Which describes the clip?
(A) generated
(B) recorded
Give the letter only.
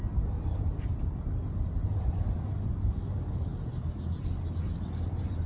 B